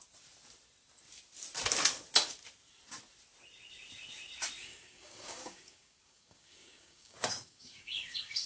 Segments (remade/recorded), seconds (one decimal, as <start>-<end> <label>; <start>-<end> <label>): 0.0-4.6 recorded; 4.6-8.5 remade